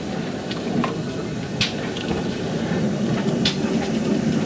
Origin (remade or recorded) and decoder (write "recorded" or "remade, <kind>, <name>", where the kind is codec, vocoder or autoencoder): recorded